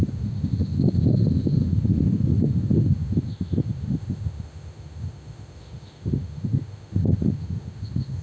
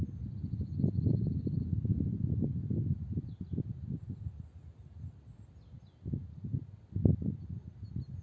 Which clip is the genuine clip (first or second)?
second